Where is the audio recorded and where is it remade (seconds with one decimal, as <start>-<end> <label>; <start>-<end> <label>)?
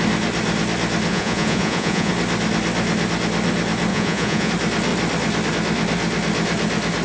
0.0-1.1 recorded; 1.1-2.1 remade; 2.1-3.9 recorded; 3.9-4.5 remade; 4.5-7.0 recorded